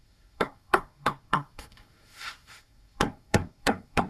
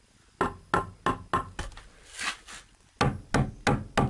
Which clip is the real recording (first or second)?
second